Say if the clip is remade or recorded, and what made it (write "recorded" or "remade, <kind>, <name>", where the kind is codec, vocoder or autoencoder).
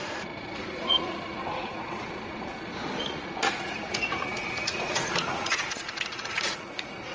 remade, vocoder, Vocos